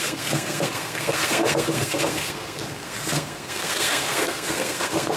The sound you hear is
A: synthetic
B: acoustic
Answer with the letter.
A